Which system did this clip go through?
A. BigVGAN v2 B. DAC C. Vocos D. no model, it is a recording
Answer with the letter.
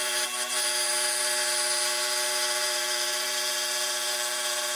A